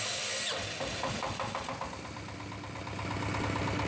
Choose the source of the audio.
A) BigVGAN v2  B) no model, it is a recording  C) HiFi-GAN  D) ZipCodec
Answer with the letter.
B